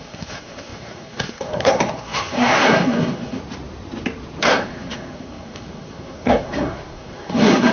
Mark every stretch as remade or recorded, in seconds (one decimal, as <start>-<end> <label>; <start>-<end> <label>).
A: 0.0-3.4 remade; 3.4-4.4 recorded; 4.4-7.7 remade